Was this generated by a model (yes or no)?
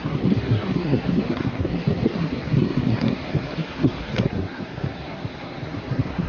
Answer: yes